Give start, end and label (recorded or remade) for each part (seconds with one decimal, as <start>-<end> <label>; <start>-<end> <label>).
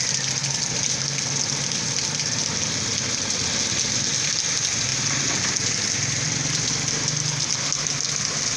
0.0-8.6 recorded